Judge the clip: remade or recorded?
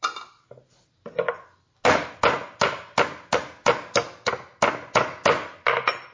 recorded